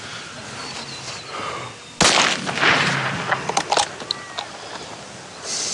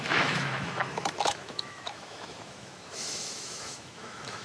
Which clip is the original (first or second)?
first